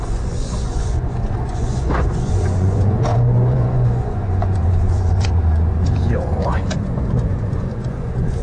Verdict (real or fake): fake